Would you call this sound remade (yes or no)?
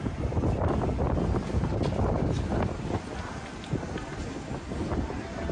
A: no